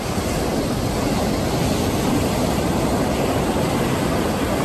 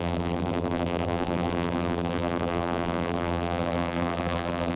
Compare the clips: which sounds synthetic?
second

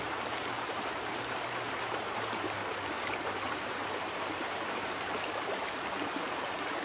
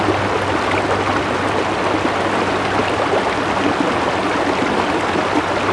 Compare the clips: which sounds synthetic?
first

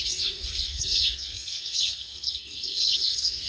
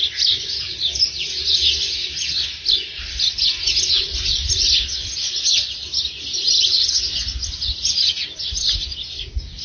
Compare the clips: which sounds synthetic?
first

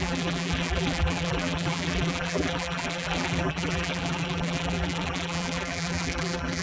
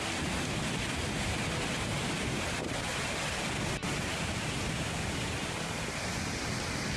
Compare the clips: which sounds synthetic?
first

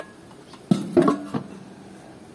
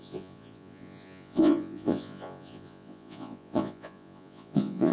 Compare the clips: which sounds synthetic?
second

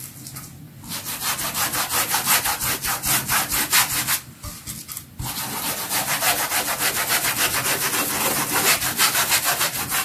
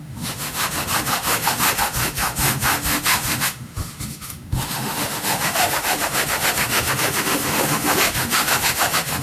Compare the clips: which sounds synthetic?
second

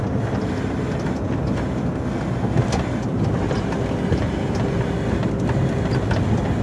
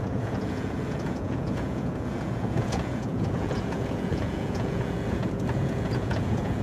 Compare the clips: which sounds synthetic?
second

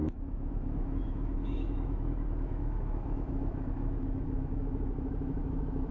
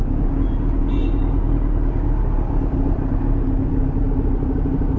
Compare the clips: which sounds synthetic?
first